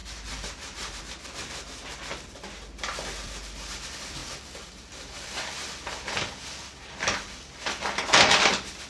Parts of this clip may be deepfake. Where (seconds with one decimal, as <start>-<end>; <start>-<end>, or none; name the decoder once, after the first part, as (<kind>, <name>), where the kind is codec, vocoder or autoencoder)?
0.0-1.0 (vocoder, BigVGAN v2)